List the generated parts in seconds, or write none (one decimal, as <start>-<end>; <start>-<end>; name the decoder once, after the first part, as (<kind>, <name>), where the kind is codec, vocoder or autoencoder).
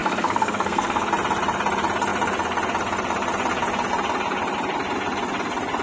0.0-1.1 (codec, SNAC)